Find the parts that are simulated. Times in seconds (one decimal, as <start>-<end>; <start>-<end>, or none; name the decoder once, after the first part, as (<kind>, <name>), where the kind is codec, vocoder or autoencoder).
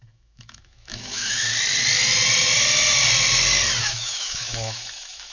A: 0.0-1.5 (autoencoder, DAC-VAE); 3.8-5.3